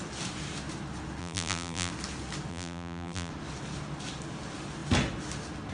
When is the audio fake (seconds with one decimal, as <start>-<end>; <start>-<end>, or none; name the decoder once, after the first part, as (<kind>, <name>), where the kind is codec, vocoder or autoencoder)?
1.2-1.9 (vocoder, BigVGAN v2); 2.5-3.3